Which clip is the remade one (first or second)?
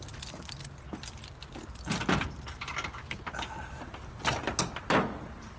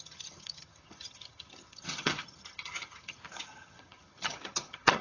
second